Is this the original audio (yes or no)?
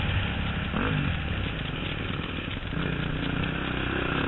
yes